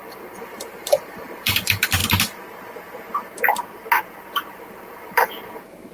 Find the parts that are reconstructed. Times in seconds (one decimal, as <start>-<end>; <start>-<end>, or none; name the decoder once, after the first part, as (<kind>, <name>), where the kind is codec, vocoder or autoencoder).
0.0-2.0 (vocoder, BigVGAN v2); 4.6-5.9